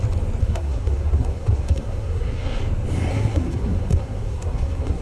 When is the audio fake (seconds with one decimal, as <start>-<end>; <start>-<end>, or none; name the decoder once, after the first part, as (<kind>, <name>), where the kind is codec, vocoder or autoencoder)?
0.4-2.6 (codec, SNAC); 3.1-5.0